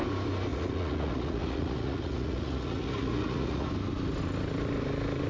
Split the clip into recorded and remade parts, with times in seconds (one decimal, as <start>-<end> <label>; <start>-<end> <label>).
0.0-0.5 recorded; 0.5-3.7 remade; 3.7-5.3 recorded